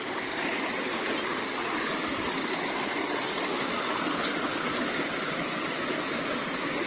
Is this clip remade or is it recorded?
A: recorded